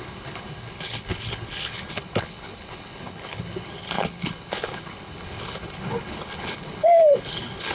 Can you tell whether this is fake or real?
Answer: fake